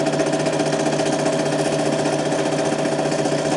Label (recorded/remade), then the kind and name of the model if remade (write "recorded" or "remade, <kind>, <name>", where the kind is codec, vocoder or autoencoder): recorded